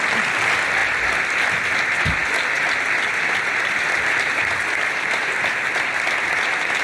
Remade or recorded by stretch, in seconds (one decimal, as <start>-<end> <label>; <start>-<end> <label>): 0.0-6.8 recorded